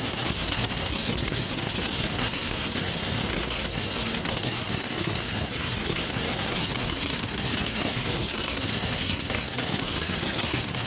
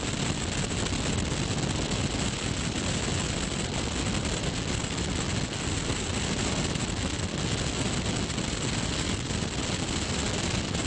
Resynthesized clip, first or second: first